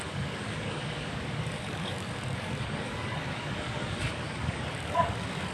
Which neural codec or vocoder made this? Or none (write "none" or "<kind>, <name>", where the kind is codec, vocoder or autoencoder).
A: codec, DAC